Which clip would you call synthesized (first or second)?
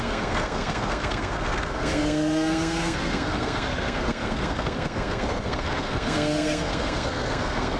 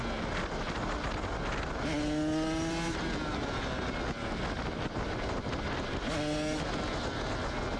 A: first